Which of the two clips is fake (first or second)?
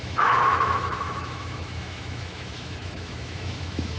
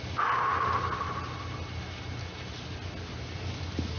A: first